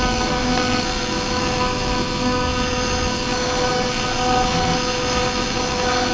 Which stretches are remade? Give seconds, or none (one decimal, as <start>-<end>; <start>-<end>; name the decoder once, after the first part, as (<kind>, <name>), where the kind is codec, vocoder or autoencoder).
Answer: 0.0-6.1 (codec, SNAC)